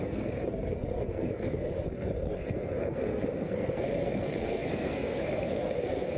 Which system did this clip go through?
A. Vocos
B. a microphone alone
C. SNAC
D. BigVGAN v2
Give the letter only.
C